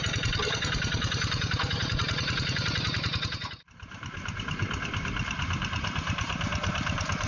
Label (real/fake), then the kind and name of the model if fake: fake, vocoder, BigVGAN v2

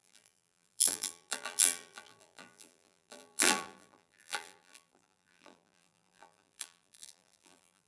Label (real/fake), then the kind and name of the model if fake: fake, vocoder, BigVGAN v2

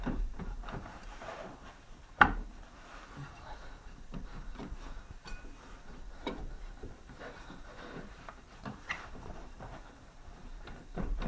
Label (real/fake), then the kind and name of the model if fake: fake, vocoder, BigVGAN v2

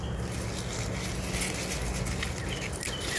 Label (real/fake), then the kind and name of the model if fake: real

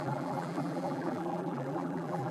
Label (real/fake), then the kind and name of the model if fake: fake, vocoder, BigVGAN v2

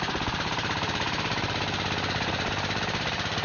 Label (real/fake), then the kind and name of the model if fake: fake, vocoder, BigVGAN v2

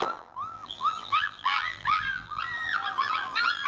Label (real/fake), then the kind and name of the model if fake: fake, vocoder, BigVGAN v2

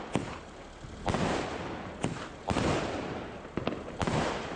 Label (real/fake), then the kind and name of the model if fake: fake, vocoder, BigVGAN v2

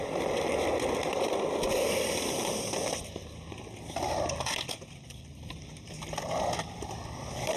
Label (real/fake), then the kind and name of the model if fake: fake, vocoder, BigVGAN v2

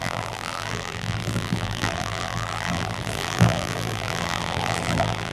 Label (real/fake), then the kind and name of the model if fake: fake, vocoder, BigVGAN v2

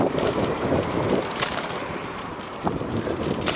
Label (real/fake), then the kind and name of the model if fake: fake, vocoder, BigVGAN v2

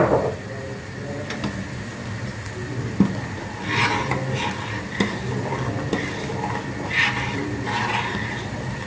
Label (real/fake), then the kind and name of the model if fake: real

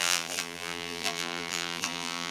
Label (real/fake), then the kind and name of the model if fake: fake, vocoder, BigVGAN v2